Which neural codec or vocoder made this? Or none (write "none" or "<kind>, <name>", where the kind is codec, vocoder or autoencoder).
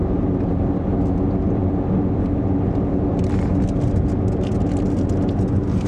none